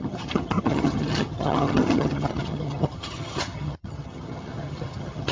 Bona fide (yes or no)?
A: no